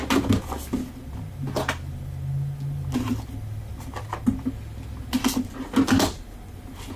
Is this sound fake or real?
real